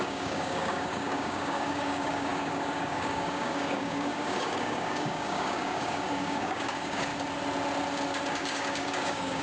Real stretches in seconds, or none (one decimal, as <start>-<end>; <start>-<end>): 7.1-8.3